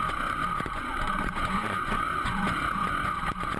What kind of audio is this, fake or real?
fake